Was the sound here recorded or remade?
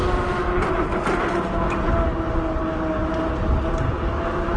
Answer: recorded